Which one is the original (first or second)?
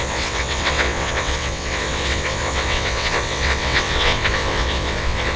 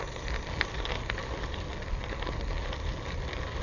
second